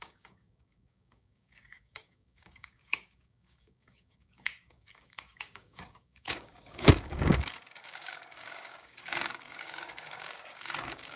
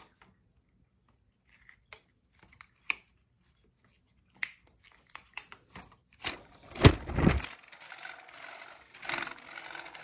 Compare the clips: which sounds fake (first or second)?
first